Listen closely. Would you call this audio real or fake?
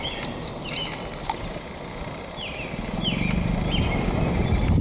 real